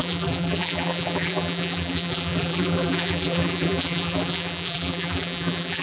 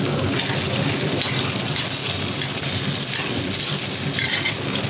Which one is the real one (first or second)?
second